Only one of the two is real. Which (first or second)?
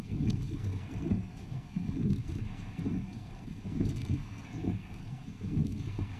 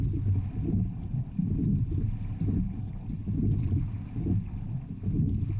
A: second